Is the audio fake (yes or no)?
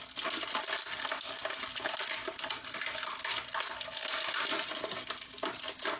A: no